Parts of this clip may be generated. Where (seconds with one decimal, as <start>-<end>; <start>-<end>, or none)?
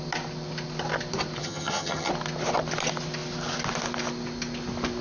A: 1.4-2.1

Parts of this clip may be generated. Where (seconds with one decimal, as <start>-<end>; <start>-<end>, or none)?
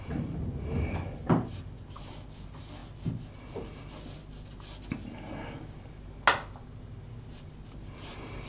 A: none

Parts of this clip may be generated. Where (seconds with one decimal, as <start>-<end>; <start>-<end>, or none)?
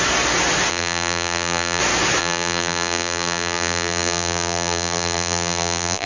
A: 0.7-1.8; 2.2-6.1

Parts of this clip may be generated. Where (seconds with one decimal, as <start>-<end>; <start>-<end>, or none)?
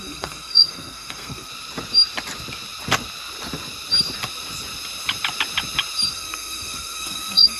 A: 0.0-1.5; 6.1-7.6